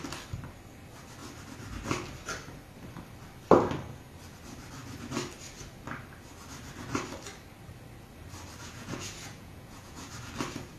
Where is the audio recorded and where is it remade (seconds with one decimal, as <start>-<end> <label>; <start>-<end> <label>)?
0.0-8.6 recorded; 8.6-10.1 remade; 10.1-10.8 recorded